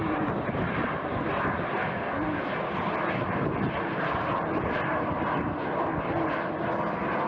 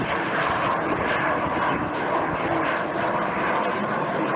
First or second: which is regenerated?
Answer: second